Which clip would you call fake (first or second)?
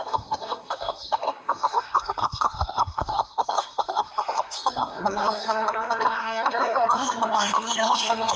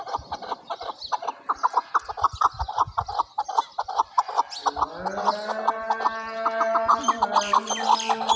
first